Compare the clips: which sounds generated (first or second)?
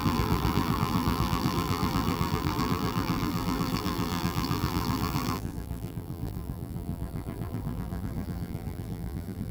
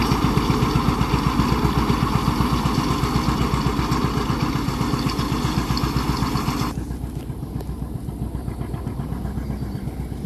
first